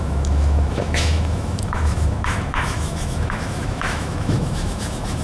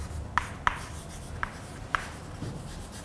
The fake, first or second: first